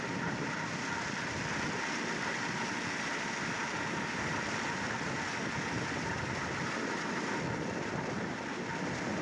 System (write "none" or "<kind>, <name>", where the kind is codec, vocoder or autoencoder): none